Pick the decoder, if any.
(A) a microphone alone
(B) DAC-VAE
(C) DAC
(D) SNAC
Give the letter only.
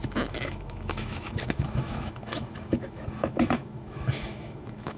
B